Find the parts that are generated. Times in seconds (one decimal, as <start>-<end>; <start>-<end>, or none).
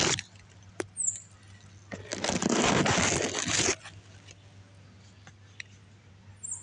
none